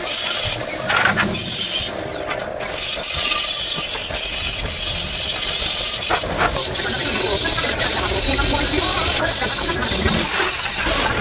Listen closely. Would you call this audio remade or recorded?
remade